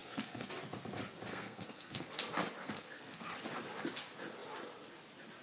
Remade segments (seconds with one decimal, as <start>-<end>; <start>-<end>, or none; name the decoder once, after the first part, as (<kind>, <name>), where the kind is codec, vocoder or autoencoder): 0.0-0.5 (codec, SNAC); 1.3-2.1; 2.6-3.3